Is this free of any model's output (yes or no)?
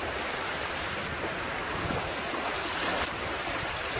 no